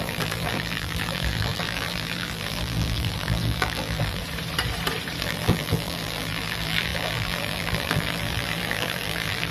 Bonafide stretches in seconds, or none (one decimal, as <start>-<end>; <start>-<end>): 4.2-5.2